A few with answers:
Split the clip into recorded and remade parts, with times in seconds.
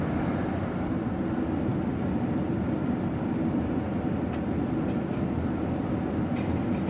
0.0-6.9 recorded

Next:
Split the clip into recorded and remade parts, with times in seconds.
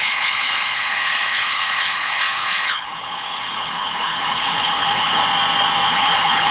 0.0-5.2 remade; 5.2-5.9 recorded; 5.9-6.5 remade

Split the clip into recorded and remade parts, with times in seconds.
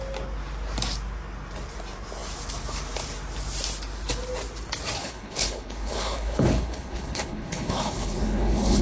0.0-5.0 recorded; 5.0-8.8 remade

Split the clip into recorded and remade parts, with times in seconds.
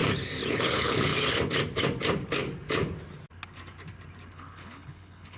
0.0-0.5 recorded; 0.5-1.1 remade; 1.1-4.3 recorded; 4.3-5.4 remade